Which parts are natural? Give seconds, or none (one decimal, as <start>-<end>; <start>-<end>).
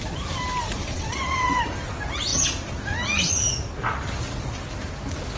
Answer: 0.0-0.8; 1.6-5.4